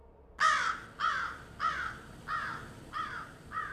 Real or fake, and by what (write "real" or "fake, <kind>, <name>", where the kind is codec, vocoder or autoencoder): real